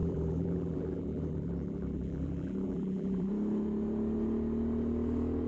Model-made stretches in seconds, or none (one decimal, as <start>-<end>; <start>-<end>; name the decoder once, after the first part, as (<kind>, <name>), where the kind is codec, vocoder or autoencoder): 0.0-3.3 (vocoder, BigVGAN v2)